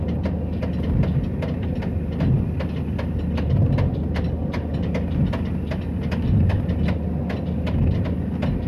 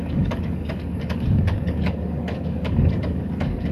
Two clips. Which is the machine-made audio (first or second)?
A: second